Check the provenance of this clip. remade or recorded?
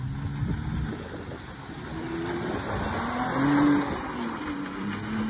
recorded